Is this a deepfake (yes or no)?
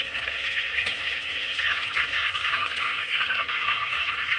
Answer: yes